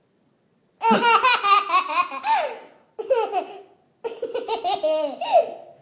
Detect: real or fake real